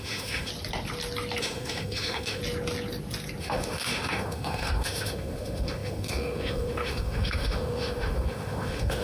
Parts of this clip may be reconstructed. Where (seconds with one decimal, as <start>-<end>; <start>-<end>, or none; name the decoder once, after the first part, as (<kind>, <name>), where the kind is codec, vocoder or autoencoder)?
0.0-0.5 (autoencoder, DAC-VAE); 1.4-2.4; 3.4-9.0